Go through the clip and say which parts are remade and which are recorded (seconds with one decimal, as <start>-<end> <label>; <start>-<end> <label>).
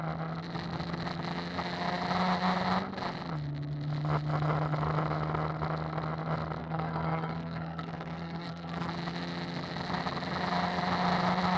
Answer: 0.0-6.6 recorded; 6.6-8.9 remade; 8.9-11.6 recorded